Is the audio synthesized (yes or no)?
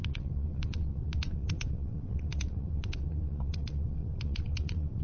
yes